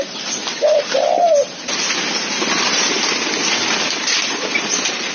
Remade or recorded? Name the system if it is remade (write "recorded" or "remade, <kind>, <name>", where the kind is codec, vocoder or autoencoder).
recorded